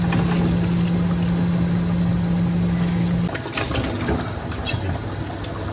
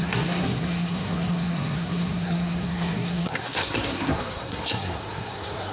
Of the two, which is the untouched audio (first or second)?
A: first